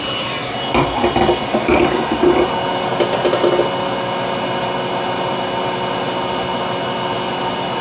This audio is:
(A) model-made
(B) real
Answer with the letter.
B